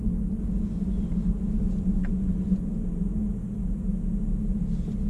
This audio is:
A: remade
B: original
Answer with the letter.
B